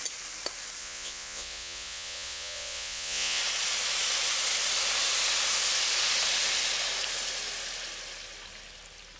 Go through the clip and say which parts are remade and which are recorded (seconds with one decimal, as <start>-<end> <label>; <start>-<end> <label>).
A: 0.0-0.8 recorded; 0.8-3.4 remade; 3.4-9.2 recorded